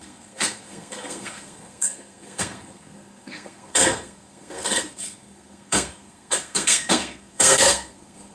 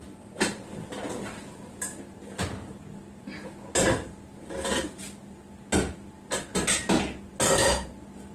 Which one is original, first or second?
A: second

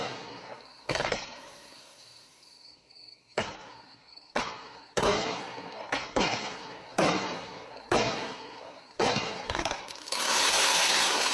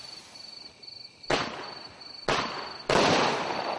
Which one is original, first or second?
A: second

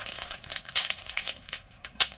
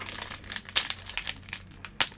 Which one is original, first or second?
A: second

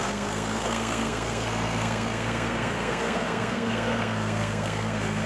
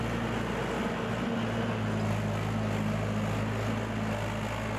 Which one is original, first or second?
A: second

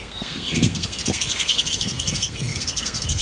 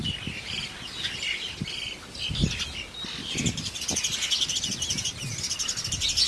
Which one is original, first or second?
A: second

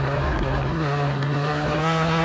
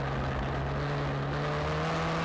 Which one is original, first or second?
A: second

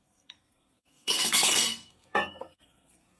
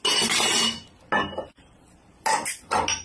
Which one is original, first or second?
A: second